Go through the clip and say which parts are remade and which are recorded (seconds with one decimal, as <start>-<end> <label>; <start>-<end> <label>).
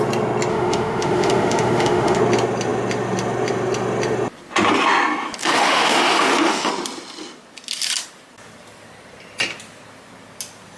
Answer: 0.0-0.5 recorded; 0.5-2.2 remade; 2.2-5.4 recorded; 5.4-6.7 remade; 6.7-10.8 recorded